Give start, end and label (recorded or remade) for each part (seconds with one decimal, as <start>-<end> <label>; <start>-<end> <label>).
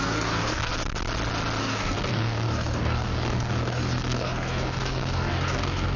0.0-0.7 remade; 0.7-1.6 recorded; 1.6-6.0 remade